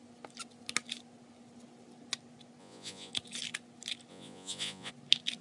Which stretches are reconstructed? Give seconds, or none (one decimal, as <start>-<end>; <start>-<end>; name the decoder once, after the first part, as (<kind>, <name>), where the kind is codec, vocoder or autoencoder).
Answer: 2.6-3.1 (vocoder, Vocos); 4.1-4.9